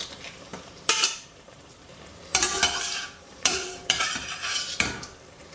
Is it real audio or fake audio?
fake